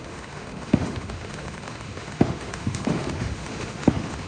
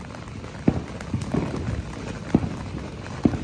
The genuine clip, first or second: second